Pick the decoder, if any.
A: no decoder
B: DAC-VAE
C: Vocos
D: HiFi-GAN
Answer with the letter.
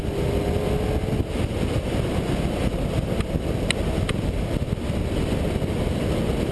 A